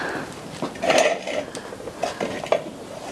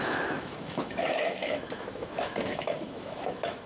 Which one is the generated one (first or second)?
second